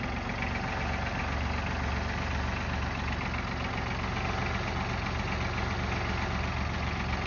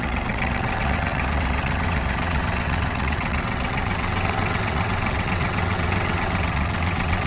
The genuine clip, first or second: first